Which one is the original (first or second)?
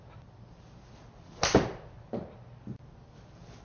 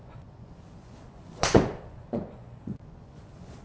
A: first